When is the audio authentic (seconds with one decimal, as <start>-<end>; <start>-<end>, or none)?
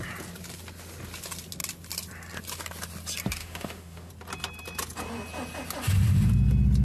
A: 0.0-3.4; 4.1-6.8